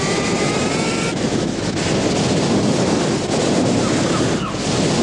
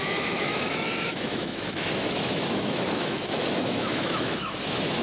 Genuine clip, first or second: first